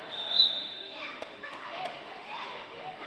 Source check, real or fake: fake